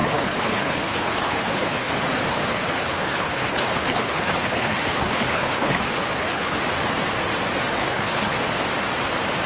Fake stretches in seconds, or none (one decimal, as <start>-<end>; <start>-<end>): 0.0-1.9; 2.5-6.6; 7.8-8.4